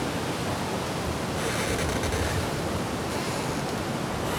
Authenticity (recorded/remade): recorded